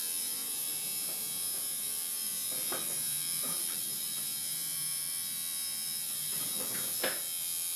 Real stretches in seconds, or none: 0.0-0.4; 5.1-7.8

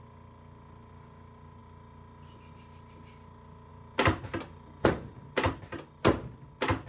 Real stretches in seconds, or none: 0.0-3.7; 6.0-6.9

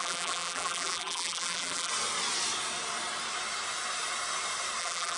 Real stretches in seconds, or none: 1.9-4.8